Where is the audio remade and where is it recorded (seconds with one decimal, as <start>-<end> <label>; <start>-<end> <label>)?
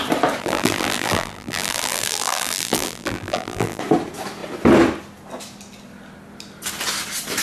0.0-0.4 recorded; 0.4-3.8 remade; 3.8-7.4 recorded